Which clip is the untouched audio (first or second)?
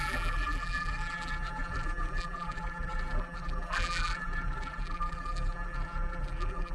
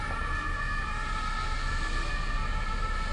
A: second